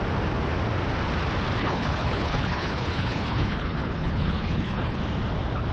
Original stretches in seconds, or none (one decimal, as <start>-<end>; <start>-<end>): 0.0-1.6; 5.0-5.7